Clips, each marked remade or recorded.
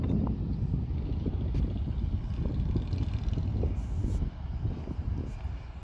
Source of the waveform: recorded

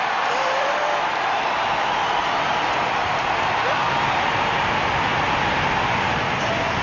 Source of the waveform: remade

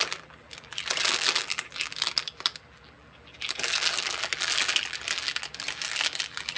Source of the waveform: remade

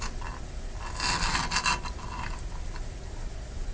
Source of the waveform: recorded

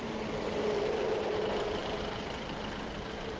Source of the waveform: remade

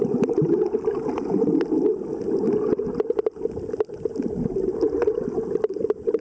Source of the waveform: recorded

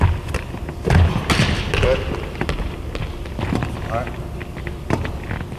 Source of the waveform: recorded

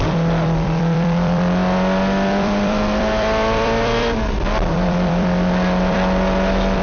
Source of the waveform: remade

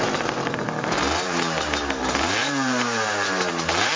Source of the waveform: remade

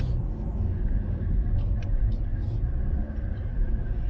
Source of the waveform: recorded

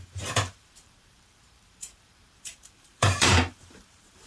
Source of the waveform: remade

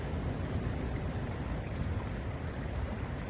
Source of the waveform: remade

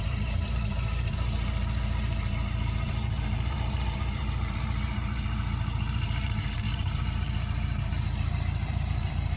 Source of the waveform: remade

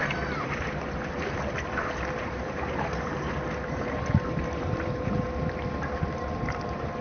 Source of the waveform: remade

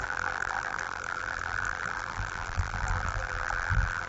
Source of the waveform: remade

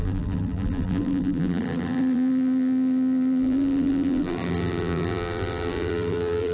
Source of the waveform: remade